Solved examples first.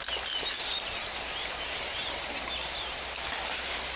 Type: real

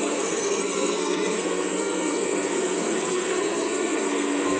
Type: fake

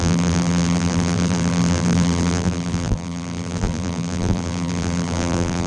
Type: fake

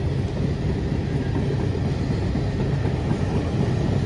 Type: real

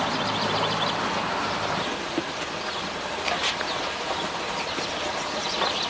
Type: real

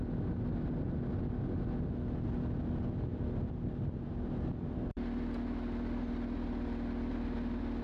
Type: real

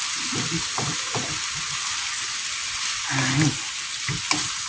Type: real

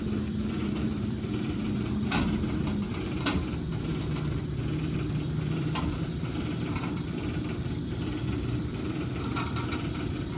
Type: fake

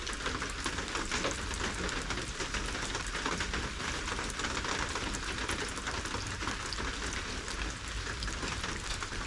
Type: real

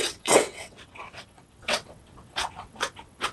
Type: fake